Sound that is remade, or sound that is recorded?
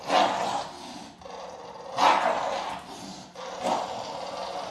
recorded